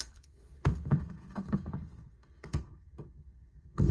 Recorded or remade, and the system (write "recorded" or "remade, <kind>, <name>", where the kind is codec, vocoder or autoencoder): remade, codec, SNAC